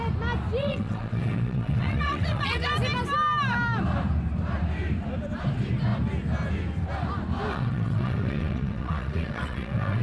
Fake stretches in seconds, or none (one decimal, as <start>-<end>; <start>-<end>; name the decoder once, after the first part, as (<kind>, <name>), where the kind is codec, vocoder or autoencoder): 0.6-2.7 (vocoder, WaveNeXt); 7.5-10.0